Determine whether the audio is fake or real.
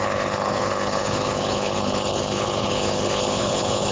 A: fake